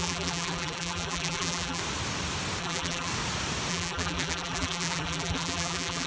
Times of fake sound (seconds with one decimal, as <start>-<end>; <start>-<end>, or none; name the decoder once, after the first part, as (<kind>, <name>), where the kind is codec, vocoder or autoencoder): 0.0-1.8 (vocoder, BigVGAN v2); 2.6-3.1; 3.7-6.1